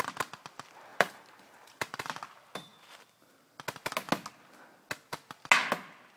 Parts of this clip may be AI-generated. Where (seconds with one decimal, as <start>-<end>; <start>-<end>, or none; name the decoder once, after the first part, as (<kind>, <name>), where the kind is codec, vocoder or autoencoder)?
0.9-2.0 (vocoder, BigVGAN v2)